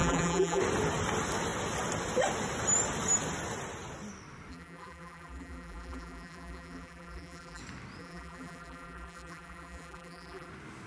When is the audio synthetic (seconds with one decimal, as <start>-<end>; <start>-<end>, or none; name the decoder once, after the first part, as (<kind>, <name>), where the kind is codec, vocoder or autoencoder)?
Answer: 0.0-0.6 (vocoder, BigVGAN v2); 4.5-7.6; 8.0-10.5